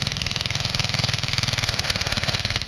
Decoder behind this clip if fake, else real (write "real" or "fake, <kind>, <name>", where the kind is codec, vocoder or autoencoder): fake, autoencoder, DAC-VAE